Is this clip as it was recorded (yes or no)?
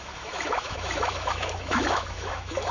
no